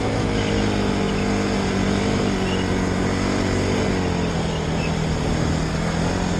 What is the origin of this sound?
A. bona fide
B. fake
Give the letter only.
A